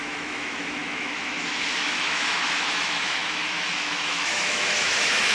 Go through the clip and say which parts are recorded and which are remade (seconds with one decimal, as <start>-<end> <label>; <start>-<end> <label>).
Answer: 0.0-5.3 remade